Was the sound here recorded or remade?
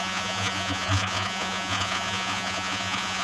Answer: remade